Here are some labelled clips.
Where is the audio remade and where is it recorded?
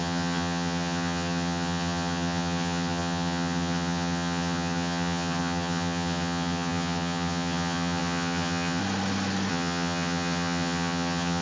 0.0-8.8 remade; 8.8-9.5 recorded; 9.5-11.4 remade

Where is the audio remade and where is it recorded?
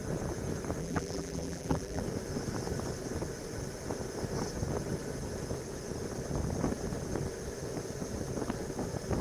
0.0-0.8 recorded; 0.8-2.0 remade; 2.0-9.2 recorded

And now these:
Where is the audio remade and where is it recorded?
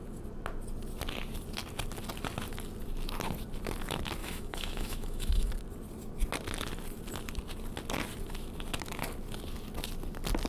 0.0-4.2 recorded; 4.2-5.5 remade; 5.5-10.5 recorded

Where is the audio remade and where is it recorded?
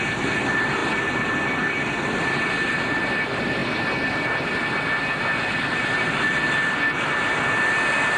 0.0-8.2 recorded